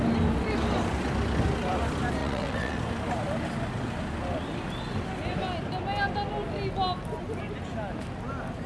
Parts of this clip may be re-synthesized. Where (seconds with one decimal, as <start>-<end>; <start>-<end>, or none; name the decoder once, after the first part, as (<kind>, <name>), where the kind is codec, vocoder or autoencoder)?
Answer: 2.2-2.8 (vocoder, WaveNeXt)